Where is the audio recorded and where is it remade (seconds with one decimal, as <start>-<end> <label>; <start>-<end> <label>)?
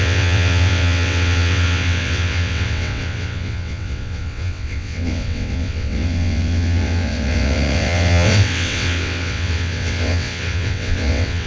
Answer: 0.0-11.5 remade